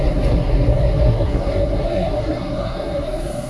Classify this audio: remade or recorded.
remade